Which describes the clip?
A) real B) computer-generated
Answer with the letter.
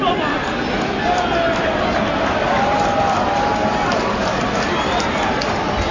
A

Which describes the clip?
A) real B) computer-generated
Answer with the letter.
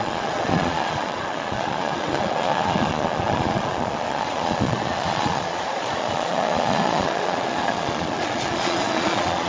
B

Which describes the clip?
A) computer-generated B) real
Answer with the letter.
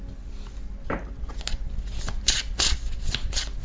B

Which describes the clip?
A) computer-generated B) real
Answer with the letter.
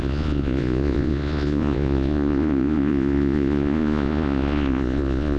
A